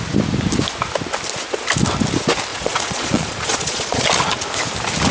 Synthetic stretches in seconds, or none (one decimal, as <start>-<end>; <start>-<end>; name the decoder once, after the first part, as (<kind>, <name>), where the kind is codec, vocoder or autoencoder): 2.5-4.0 (vocoder, Vocos)